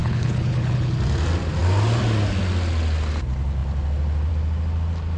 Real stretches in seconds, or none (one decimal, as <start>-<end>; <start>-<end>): 0.9-5.2